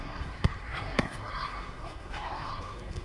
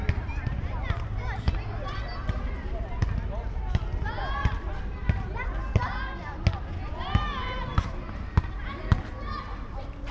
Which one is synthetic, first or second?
first